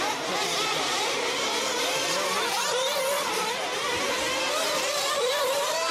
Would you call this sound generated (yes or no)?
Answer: yes